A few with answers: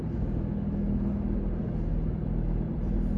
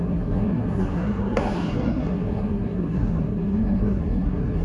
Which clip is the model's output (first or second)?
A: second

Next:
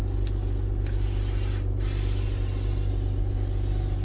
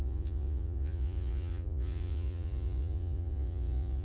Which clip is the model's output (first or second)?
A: second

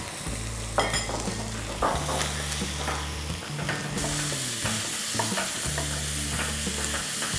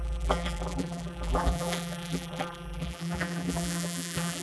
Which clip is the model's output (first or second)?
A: second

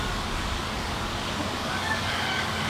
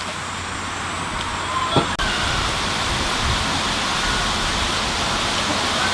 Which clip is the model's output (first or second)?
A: first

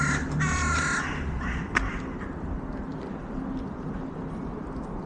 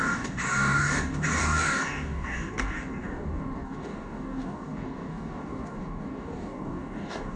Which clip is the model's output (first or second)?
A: second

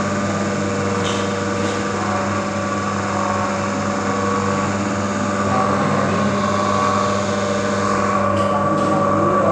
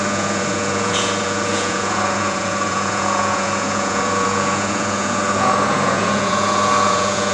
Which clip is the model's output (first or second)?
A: second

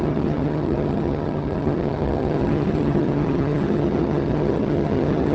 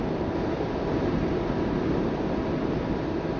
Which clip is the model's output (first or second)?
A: first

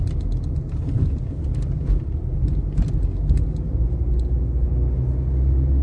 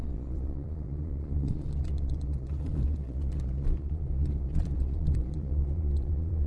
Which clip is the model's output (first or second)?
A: second